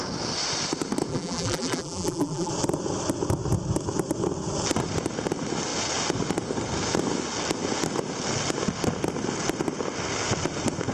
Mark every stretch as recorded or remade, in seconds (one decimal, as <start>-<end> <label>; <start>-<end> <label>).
0.0-1.1 recorded; 1.1-2.5 remade; 2.5-10.9 recorded